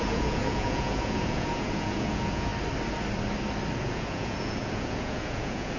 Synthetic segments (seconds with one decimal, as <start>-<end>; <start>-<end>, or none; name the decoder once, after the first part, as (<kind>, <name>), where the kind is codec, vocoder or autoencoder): 0.0-2.5 (vocoder, Vocos); 3.8-5.8